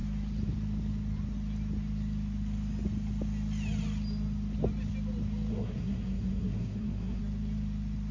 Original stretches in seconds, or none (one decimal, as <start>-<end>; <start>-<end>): 0.0-5.5; 7.2-8.1